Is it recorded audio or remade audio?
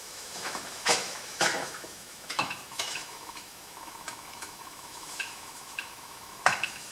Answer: remade